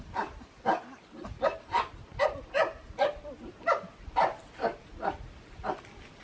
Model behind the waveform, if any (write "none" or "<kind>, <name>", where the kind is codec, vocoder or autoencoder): none